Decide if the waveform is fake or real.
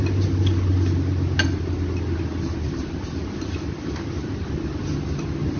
real